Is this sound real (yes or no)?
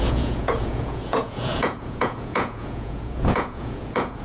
no